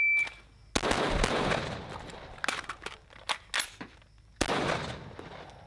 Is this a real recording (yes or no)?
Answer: yes